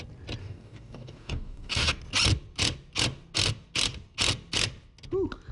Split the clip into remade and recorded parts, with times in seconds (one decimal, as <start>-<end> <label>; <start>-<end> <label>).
0.0-0.4 recorded; 0.4-2.0 remade; 2.0-5.5 recorded